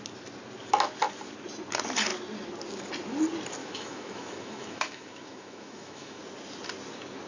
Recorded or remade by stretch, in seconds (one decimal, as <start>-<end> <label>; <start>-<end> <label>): 0.0-3.6 recorded; 3.6-6.2 remade; 6.2-7.3 recorded